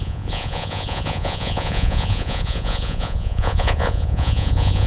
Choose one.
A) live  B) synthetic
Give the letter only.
B